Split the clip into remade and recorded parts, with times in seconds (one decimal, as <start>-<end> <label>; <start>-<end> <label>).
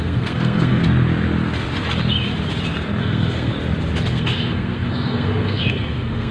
0.0-0.8 remade; 0.8-3.0 recorded; 3.0-3.5 remade; 3.5-4.1 recorded; 4.1-6.3 remade